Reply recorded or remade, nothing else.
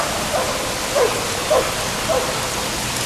recorded